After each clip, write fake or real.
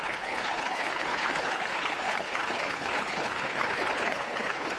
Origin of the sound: fake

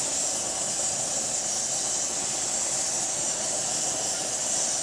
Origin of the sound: real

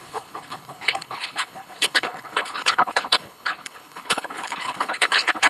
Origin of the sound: fake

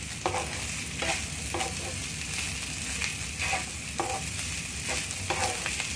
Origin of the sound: real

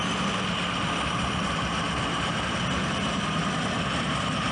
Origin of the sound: real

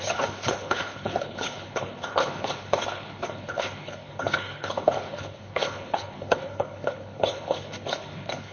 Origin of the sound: fake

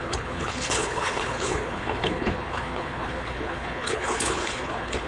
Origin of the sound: fake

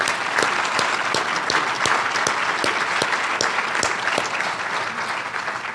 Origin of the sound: real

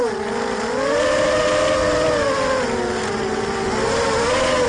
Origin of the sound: real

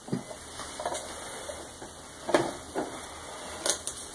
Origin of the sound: real